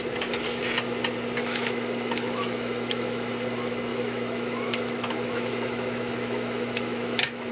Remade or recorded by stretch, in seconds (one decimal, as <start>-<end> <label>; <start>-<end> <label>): 0.0-1.4 recorded; 1.4-3.3 remade; 3.3-3.9 recorded; 3.9-7.5 remade